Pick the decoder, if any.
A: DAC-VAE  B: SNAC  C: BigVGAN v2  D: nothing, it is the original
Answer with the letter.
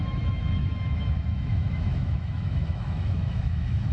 A